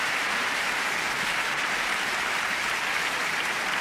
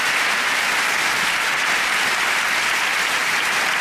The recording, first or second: second